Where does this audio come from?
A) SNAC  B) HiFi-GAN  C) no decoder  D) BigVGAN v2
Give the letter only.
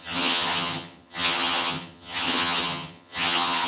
B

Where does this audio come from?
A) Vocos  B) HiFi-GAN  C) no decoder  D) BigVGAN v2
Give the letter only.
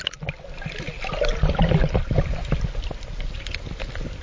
C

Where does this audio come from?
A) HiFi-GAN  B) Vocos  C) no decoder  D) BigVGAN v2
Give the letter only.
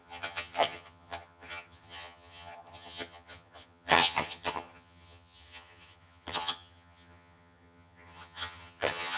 A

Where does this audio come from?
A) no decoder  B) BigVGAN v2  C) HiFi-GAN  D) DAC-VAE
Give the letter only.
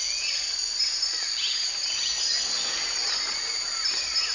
A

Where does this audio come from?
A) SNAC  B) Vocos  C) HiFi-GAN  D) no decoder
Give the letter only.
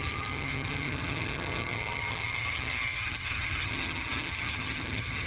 C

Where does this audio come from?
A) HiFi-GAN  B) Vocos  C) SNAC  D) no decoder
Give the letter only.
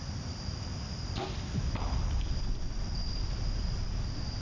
D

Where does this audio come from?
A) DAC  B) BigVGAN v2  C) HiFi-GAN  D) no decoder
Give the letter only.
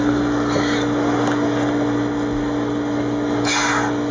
D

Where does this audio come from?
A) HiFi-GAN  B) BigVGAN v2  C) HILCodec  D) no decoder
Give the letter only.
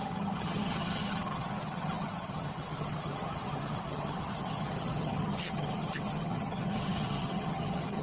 A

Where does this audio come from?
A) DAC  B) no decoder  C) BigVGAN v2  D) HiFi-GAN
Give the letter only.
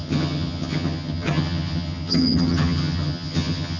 D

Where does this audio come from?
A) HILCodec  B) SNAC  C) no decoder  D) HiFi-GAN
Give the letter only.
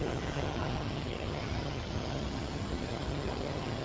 D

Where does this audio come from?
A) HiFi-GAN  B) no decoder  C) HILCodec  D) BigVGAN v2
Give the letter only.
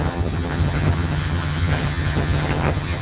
A